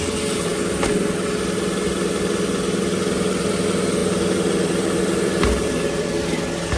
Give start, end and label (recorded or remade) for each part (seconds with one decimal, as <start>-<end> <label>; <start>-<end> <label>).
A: 0.0-4.0 recorded; 4.0-6.1 remade; 6.1-6.8 recorded